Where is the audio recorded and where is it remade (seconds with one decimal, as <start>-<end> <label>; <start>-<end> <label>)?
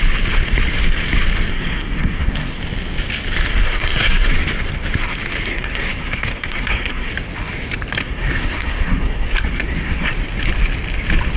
0.0-1.5 recorded; 1.5-2.6 remade; 2.6-3.6 recorded; 3.6-4.3 remade; 4.3-5.5 recorded; 5.5-7.1 remade; 7.1-8.0 recorded; 8.0-10.1 remade; 10.1-11.4 recorded